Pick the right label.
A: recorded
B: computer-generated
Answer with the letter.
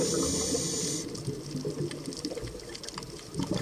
A